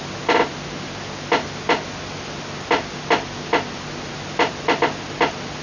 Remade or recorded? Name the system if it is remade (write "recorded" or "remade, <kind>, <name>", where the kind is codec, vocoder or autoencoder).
recorded